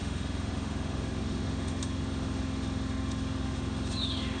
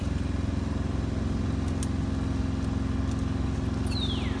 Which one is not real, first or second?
first